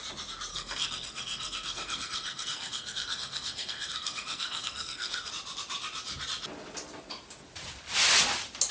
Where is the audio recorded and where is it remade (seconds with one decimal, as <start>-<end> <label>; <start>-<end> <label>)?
0.0-0.5 recorded; 0.5-5.3 remade; 5.3-8.7 recorded